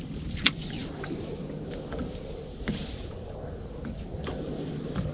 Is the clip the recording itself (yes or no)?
yes